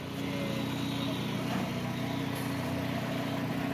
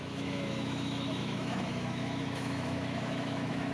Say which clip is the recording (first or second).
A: first